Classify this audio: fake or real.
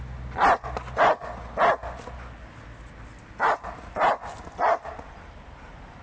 real